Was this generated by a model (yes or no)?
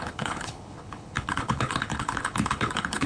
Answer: yes